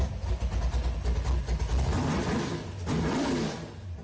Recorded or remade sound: recorded